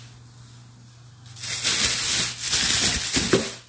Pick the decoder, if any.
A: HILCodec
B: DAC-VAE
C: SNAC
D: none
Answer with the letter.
D